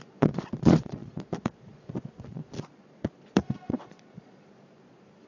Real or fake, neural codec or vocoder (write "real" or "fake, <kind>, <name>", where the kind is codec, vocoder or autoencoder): fake, vocoder, Vocos